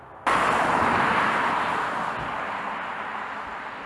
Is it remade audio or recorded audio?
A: recorded